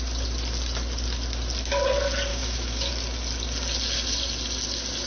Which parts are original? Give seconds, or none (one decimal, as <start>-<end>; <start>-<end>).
0.0-2.3; 2.9-5.1